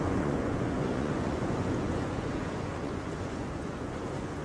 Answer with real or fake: fake